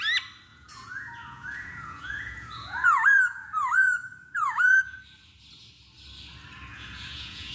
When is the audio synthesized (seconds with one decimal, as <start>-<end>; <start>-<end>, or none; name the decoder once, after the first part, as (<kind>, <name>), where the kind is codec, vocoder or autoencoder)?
0.5-5.0 (vocoder, Vocos); 6.7-7.5